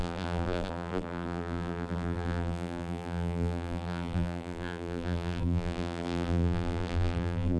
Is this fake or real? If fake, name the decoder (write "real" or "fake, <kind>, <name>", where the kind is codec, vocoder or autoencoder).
fake, vocoder, BigVGAN v2